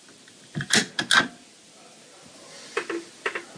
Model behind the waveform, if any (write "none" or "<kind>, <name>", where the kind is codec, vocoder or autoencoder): none